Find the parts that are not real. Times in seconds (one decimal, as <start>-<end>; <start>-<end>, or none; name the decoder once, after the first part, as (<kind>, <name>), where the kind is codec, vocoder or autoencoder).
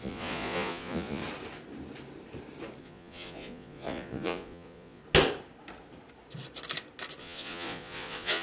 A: 0.0-1.2 (vocoder, Vocos); 2.8-5.0; 7.2-8.4